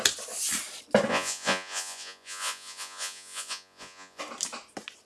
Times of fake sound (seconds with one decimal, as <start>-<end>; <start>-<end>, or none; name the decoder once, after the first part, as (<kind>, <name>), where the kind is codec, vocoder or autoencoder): 1.1-4.2 (vocoder, Vocos)